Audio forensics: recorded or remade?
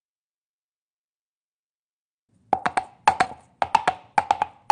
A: recorded